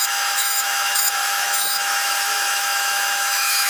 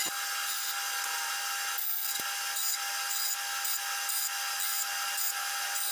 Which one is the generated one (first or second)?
first